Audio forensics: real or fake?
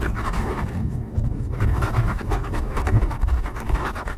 fake